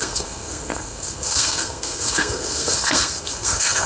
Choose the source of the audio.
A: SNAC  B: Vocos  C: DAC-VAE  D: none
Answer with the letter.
A